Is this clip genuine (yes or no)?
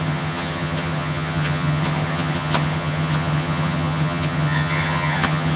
no